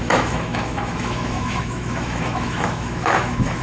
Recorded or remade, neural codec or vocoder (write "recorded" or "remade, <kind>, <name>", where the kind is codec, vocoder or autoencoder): remade, autoencoder, DAC-VAE